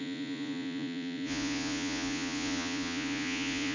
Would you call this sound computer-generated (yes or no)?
yes